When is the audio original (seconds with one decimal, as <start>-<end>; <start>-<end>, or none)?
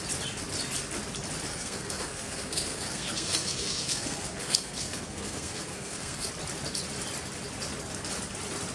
0.0-1.5; 6.3-8.7